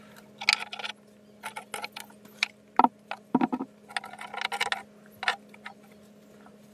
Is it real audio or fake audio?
real